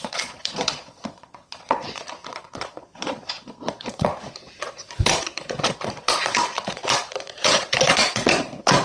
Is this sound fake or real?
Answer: fake